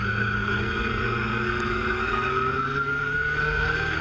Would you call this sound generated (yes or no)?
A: yes